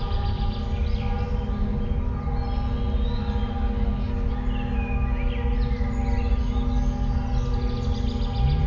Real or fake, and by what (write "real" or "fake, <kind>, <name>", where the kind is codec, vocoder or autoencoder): real